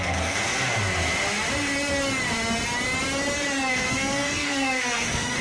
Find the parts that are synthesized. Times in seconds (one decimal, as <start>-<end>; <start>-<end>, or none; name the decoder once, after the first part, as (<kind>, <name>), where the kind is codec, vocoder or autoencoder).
0.0-0.5 (codec, SNAC); 3.7-5.4